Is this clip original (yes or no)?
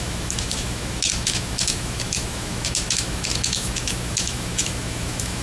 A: no